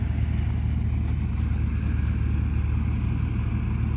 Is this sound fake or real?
real